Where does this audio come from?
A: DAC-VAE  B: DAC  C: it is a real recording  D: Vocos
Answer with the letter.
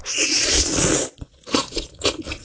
D